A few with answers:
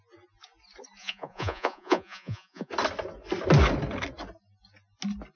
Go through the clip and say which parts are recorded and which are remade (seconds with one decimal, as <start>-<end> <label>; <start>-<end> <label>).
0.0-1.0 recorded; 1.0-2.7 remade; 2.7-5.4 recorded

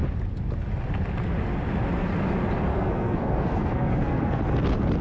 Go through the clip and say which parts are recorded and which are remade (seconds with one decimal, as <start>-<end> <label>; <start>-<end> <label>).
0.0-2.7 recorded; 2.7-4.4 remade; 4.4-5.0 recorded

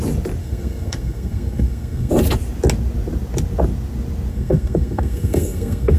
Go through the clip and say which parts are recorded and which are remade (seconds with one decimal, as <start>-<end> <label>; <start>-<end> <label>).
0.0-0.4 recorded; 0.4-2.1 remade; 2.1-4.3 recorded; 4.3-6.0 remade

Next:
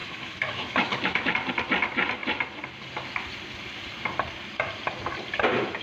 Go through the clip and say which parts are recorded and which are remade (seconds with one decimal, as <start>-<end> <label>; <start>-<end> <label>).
0.0-1.3 remade; 1.3-5.8 recorded

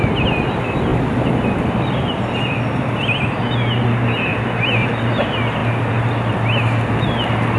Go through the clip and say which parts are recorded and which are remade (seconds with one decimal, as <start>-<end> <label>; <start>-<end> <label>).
0.0-4.3 recorded; 4.3-5.1 remade; 5.1-7.6 recorded